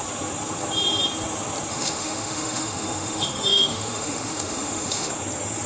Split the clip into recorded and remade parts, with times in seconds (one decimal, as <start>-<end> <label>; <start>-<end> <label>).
0.0-1.7 recorded; 1.7-5.1 remade; 5.1-5.7 recorded